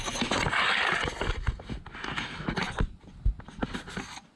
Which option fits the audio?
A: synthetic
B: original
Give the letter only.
B